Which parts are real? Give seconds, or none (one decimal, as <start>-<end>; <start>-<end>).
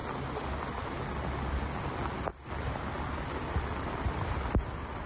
0.0-5.1